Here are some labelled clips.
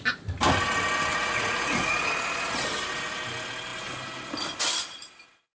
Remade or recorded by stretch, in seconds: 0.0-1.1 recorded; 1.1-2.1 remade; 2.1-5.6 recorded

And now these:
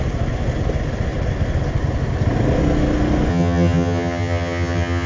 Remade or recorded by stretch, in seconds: 0.0-3.3 recorded; 3.3-5.1 remade

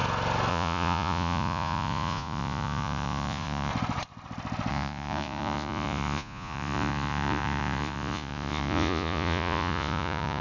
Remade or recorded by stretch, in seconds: 0.0-0.5 recorded; 0.5-3.7 remade; 3.7-4.7 recorded; 4.7-10.4 remade

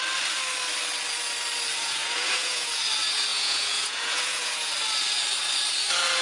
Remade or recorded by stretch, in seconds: 0.0-1.8 recorded; 1.8-2.8 remade; 2.8-3.3 recorded; 3.3-4.7 remade; 4.7-6.2 recorded

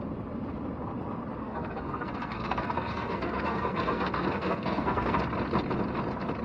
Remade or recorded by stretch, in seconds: 0.0-1.4 recorded; 1.4-5.2 remade; 5.2-6.4 recorded

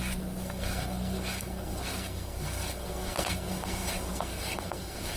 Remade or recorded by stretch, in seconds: 0.0-5.2 remade

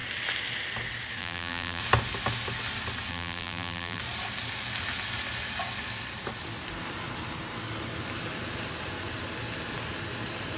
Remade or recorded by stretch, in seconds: 0.0-1.2 recorded; 1.2-1.8 remade; 1.8-3.1 recorded; 3.1-4.0 remade; 4.0-10.6 recorded